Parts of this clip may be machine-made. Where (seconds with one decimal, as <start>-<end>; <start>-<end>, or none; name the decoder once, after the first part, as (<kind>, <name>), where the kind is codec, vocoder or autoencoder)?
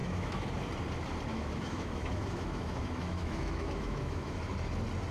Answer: 0.0-0.5 (autoencoder, DAC-VAE); 1.3-4.4